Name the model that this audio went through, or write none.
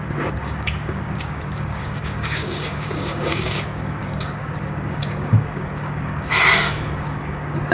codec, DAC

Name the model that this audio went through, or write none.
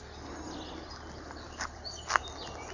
none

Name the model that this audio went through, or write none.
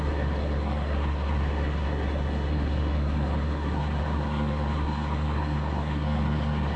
codec, SNAC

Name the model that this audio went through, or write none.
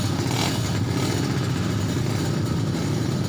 none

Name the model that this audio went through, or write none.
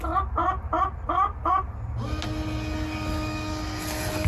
none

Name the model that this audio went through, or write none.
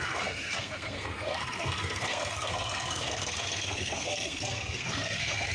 codec, SNAC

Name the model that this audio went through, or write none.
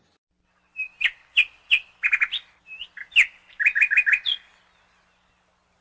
none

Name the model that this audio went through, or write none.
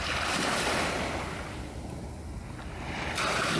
none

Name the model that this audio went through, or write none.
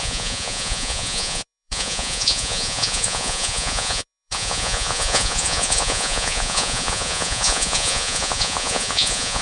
vocoder, Vocos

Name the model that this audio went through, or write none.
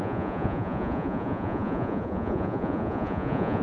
vocoder, Vocos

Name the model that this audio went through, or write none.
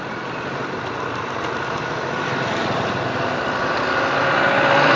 none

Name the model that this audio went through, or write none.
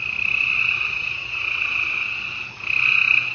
none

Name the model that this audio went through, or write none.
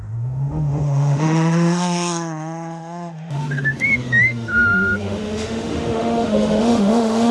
autoencoder, DAC-VAE